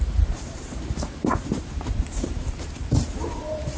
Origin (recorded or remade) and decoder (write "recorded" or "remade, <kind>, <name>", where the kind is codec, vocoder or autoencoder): remade, vocoder, BigVGAN v2